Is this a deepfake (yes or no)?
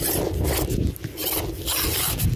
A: no